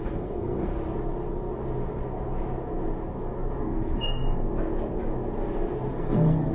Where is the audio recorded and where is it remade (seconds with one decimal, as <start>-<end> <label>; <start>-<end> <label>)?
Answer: 0.0-0.7 remade; 0.7-3.6 recorded; 3.6-4.2 remade; 4.2-5.9 recorded; 5.9-6.5 remade